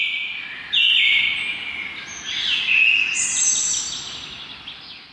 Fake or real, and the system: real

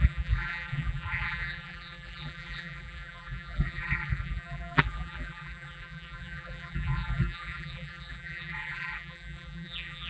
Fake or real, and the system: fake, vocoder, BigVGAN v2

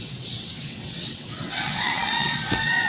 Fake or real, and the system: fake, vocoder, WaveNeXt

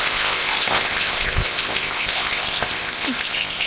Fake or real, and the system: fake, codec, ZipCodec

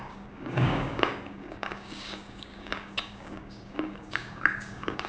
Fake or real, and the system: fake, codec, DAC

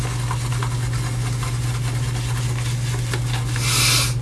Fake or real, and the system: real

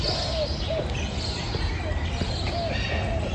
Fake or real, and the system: real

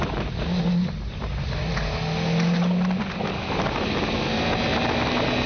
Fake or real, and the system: real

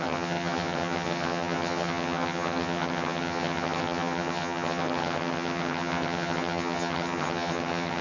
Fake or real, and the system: fake, vocoder, HiFi-GAN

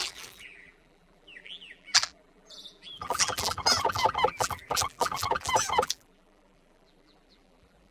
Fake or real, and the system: fake, vocoder, BigVGAN v2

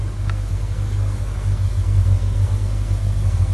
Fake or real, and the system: fake, codec, SNAC